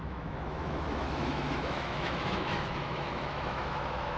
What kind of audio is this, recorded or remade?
remade